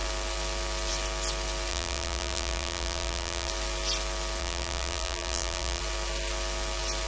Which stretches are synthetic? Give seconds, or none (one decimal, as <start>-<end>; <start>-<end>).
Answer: 1.7-3.5; 4.4-5.8